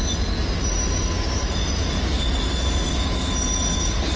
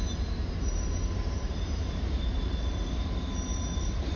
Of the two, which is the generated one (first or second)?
second